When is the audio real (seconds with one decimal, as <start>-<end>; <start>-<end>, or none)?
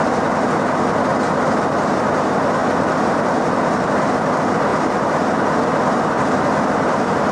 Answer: 0.0-1.1; 2.1-2.6; 4.1-4.7; 6.2-7.3